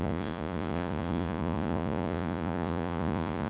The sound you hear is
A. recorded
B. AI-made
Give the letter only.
B